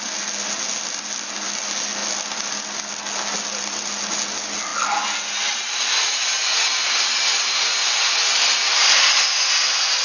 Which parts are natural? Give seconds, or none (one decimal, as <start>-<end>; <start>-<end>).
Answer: 0.0-10.0